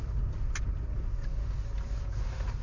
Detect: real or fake real